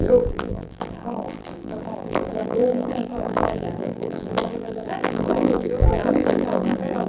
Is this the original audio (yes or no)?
no